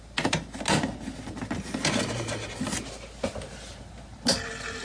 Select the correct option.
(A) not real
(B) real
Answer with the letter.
B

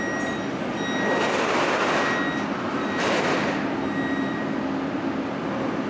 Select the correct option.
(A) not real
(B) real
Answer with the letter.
B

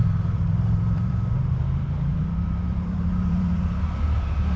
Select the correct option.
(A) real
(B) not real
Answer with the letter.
B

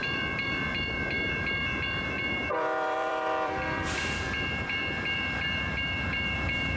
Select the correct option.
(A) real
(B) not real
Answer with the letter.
B